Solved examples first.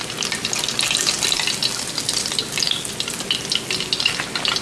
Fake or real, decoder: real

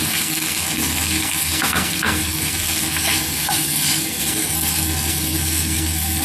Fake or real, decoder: fake, codec, SNAC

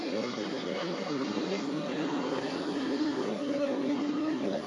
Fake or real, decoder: fake, codec, SNAC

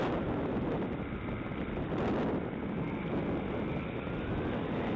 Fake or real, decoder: real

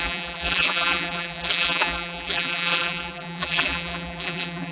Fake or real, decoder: fake, vocoder, BigVGAN v2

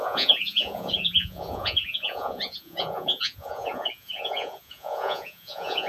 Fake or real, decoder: fake, vocoder, Vocos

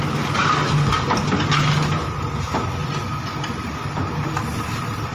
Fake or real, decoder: real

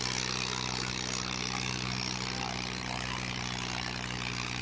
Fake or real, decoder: real